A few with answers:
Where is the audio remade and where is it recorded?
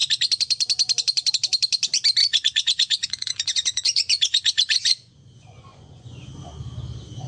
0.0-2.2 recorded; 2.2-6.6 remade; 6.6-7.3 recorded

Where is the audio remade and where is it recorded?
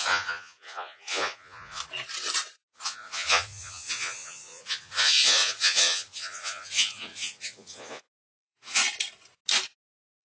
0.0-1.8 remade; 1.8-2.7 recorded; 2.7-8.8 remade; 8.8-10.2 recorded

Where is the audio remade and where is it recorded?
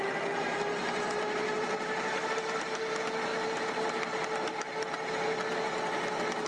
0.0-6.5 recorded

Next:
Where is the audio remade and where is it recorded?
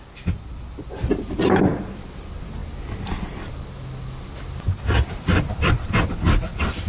0.0-6.9 recorded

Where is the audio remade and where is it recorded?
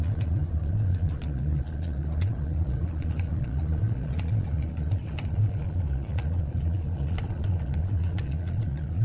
0.0-9.0 remade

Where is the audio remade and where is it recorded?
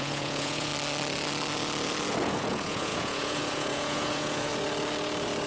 0.0-0.7 remade; 0.7-2.1 recorded; 2.1-4.5 remade; 4.5-5.5 recorded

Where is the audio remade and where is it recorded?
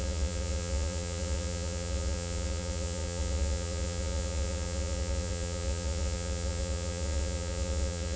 0.0-8.2 remade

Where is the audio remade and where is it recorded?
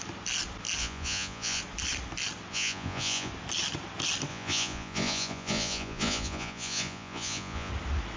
0.0-0.8 recorded; 0.8-1.6 remade; 1.6-2.5 recorded; 2.5-3.3 remade; 3.3-4.3 recorded; 4.3-7.7 remade; 7.7-8.2 recorded